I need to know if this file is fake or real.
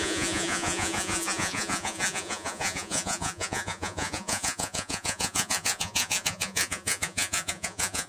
fake